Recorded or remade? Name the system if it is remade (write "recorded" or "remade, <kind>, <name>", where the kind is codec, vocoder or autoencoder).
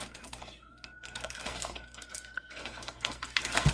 remade, codec, SNAC